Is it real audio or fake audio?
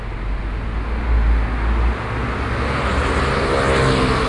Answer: real